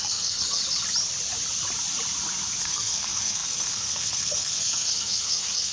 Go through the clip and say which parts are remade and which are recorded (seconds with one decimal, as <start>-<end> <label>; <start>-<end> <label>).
0.0-0.6 remade; 0.6-2.6 recorded; 2.6-5.7 remade